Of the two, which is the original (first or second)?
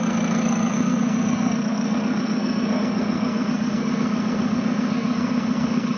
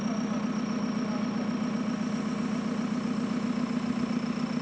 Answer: second